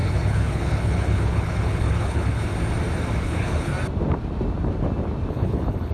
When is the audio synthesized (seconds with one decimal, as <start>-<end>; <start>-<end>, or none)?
0.0-2.5; 3.2-3.7; 5.3-5.9